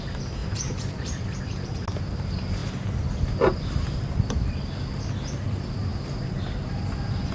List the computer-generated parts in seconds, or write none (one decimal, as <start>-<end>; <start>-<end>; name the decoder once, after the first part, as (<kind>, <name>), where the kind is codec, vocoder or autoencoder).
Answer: 0.4-1.4 (vocoder, BigVGAN v2); 2.6-4.4